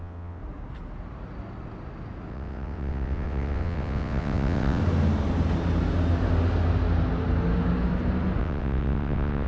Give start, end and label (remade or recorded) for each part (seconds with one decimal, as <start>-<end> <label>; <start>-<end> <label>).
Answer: 0.0-0.4 remade; 0.4-2.3 recorded; 2.3-4.8 remade; 4.8-8.4 recorded; 8.4-9.5 remade